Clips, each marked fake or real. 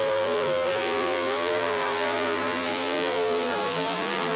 fake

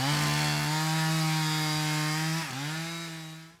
real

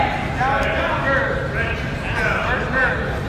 real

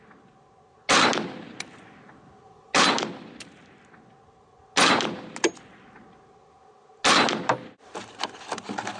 real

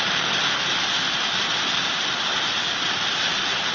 real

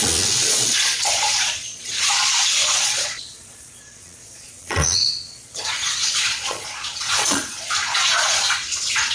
fake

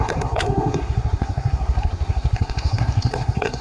fake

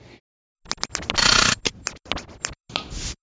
real